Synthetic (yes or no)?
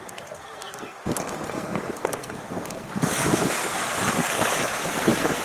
yes